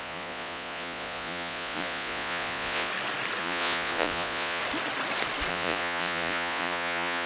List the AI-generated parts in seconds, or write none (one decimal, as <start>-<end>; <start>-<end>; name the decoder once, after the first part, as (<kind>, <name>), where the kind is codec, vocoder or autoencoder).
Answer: 0.0-2.9 (vocoder, Vocos); 3.4-4.6; 5.5-7.3

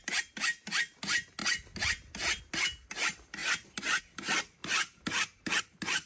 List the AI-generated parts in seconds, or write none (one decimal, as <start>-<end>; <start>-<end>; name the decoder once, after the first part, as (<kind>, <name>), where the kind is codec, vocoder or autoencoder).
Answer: none

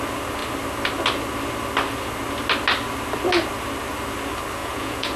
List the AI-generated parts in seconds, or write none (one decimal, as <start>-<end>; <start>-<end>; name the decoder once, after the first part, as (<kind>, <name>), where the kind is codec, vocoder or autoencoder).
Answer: 4.6-5.2 (vocoder, Vocos)